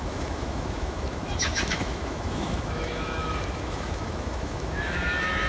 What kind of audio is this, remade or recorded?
remade